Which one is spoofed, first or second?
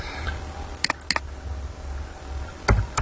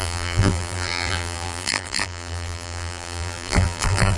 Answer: second